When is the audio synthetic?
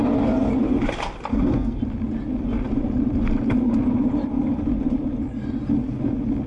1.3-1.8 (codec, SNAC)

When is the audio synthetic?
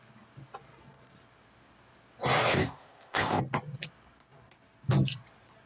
2.5-3.4 (codec, ZipCodec)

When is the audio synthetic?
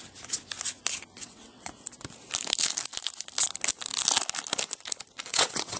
1.2-1.7 (vocoder, WaveNeXt); 5.3-5.8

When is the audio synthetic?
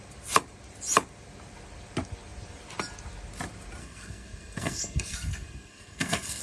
3.8-6.4 (codec, SNAC)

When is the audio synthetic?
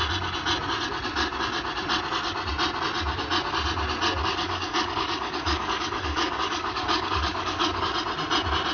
4.3-7.9 (codec, DAC)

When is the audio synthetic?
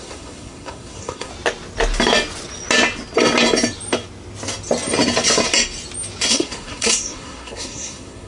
0.0-1.3 (codec, SNAC); 6.3-8.3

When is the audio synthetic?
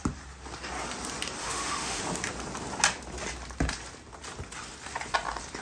1.4-2.0 (autoencoder, DAC-VAE)